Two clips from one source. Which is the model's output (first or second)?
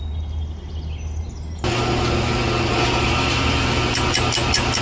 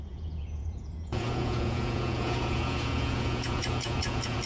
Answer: second